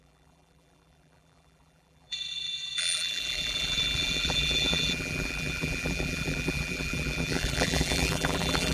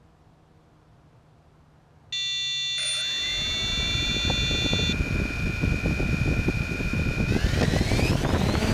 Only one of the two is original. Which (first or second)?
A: second